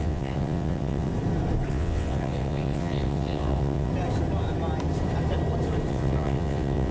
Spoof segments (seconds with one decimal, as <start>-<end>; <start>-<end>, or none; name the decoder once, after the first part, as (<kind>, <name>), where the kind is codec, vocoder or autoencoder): 0.0-1.1 (vocoder, WaveNeXt); 1.7-3.9; 5.9-6.9

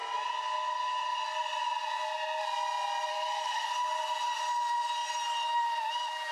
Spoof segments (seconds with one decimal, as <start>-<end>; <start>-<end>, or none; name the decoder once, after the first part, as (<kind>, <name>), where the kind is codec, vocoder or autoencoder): 3.1-3.7 (codec, SNAC)

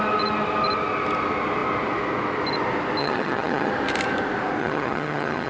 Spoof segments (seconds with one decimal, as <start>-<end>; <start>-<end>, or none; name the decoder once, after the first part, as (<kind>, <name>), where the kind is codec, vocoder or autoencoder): 3.0-3.7 (vocoder, HiFi-GAN); 4.6-5.5

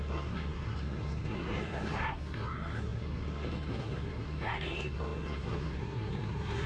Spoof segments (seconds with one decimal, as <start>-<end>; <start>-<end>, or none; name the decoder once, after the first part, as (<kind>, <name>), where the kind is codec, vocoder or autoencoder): 0.0-6.7 (codec, SNAC)

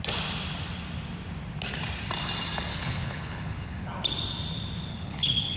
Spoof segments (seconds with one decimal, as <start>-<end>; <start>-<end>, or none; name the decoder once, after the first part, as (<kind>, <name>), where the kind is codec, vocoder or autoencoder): 2.7-3.8 (codec, HILCodec); 4.9-5.6